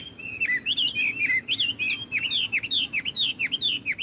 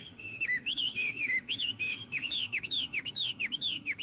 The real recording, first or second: first